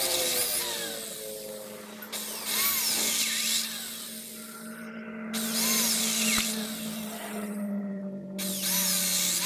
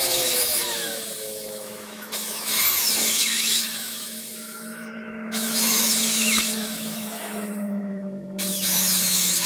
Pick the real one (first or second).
first